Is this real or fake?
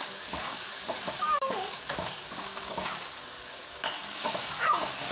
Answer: fake